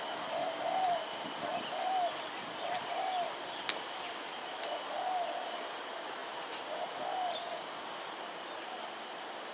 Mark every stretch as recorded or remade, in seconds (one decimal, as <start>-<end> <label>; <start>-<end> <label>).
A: 0.0-9.5 recorded